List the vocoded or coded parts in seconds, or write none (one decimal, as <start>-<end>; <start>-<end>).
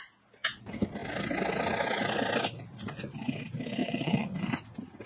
3.8-4.5